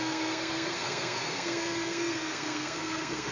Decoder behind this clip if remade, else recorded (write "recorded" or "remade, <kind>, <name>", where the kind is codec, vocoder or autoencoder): remade, codec, SNAC